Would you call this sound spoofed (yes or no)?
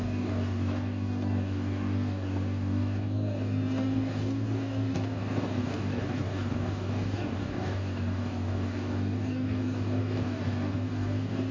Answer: yes